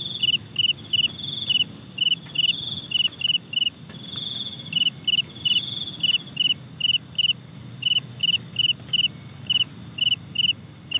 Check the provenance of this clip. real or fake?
real